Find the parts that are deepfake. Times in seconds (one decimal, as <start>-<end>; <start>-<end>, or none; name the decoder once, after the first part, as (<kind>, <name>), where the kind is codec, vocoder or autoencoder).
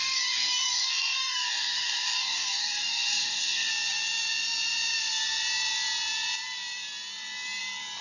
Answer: 0.0-3.7 (codec, DAC)